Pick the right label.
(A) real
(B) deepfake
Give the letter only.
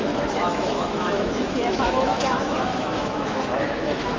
B